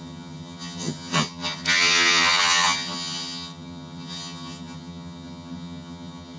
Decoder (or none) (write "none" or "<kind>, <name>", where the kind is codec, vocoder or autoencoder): vocoder, HiFi-GAN